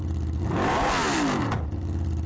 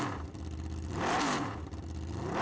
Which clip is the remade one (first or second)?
second